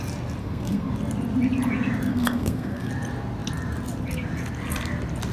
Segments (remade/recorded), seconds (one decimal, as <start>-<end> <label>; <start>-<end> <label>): 0.0-0.4 recorded; 0.4-0.9 remade; 0.9-2.1 recorded; 2.1-2.9 remade; 2.9-5.3 recorded